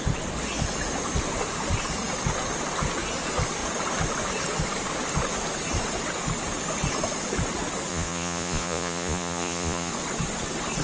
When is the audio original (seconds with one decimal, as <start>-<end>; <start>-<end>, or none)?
0.0-7.9; 9.9-10.8

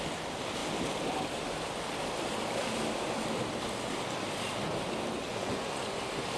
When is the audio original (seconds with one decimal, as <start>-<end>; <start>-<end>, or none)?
0.0-5.3; 6.0-6.4

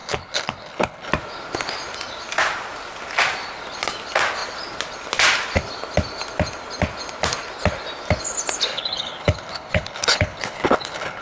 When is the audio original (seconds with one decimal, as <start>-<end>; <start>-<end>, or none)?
1.1-8.7

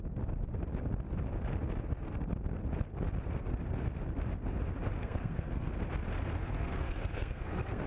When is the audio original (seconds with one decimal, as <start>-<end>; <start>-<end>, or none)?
0.0-5.0; 5.7-6.4